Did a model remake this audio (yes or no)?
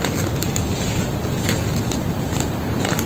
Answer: no